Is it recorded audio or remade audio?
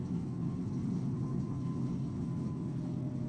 recorded